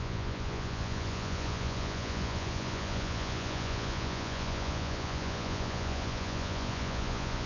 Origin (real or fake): fake